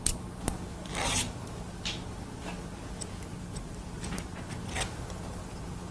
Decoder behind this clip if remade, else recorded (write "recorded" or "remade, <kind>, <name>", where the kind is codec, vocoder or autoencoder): recorded